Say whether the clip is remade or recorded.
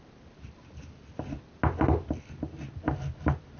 recorded